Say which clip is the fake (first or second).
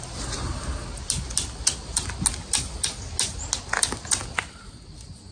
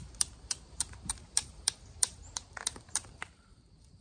second